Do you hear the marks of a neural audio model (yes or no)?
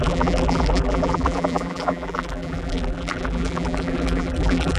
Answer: yes